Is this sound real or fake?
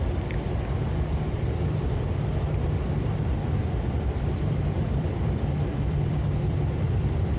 fake